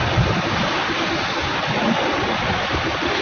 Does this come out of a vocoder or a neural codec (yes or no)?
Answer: no